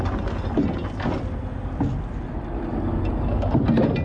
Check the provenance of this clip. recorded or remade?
recorded